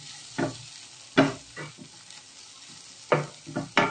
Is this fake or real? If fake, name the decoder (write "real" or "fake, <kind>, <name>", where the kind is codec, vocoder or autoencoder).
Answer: real